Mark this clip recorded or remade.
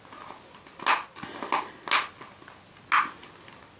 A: recorded